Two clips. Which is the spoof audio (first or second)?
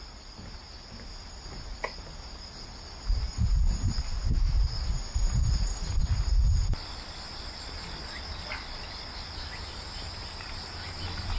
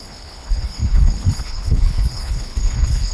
second